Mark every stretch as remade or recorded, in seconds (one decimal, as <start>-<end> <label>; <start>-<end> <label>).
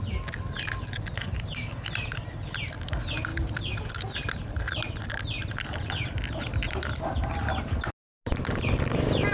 0.0-9.3 recorded